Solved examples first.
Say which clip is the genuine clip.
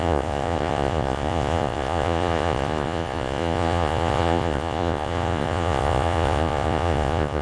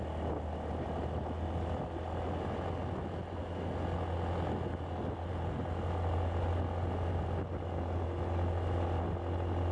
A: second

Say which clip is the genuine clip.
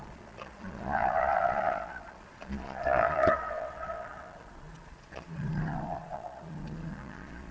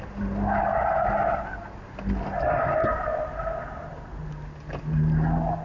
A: second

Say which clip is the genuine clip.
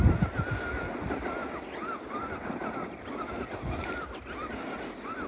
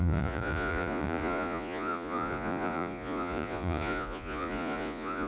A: first